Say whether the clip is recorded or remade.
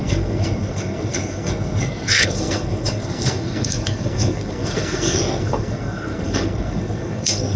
remade